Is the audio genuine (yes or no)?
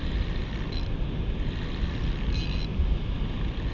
yes